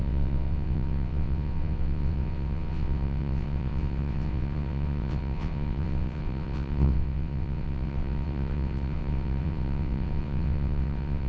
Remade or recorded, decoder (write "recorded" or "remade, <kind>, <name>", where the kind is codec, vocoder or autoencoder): remade, vocoder, WaveNeXt